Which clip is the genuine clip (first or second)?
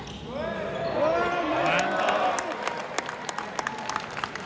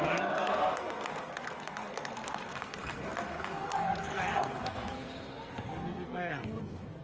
first